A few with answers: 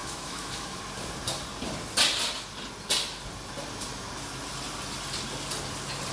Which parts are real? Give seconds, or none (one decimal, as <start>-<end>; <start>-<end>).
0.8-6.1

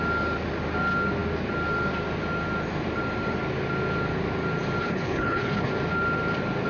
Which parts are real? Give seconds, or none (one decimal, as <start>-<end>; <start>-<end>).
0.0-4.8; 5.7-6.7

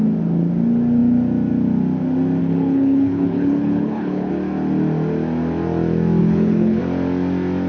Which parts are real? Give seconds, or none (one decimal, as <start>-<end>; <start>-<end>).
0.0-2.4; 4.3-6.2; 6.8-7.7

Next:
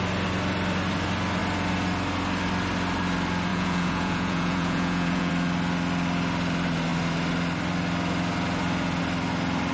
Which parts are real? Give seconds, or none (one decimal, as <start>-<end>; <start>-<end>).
0.0-3.5; 5.3-9.7

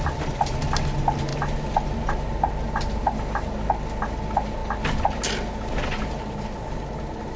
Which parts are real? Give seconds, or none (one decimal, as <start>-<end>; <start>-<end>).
0.0-7.4